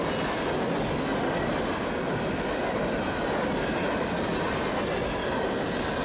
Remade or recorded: recorded